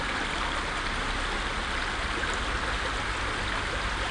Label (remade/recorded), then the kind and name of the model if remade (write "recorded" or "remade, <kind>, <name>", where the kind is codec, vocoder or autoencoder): recorded